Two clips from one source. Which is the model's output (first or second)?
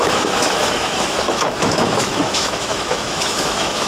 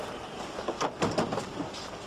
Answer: first